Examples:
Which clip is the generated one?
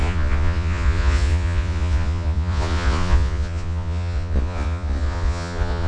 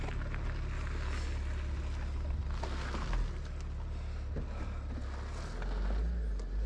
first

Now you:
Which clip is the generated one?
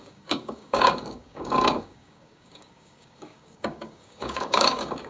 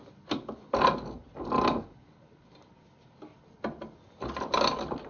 first